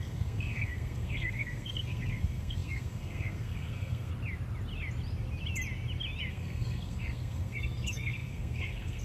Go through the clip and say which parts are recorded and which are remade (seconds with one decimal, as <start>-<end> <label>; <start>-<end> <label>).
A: 0.0-4.1 remade; 4.1-6.3 recorded; 6.3-9.0 remade